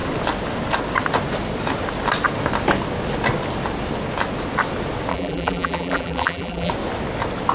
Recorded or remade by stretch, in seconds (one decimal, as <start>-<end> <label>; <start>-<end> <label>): 0.0-5.1 recorded; 5.1-6.7 remade; 6.7-7.5 recorded